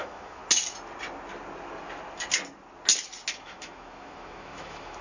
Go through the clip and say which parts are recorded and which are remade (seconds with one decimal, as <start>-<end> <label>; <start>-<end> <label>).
0.0-0.4 remade; 0.4-3.4 recorded; 3.4-5.0 remade